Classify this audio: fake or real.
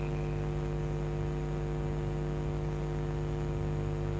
real